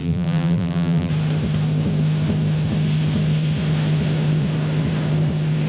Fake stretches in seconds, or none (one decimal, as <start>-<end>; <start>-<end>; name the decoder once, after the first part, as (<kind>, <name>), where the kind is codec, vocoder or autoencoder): 0.0-1.1 (vocoder, BigVGAN v2)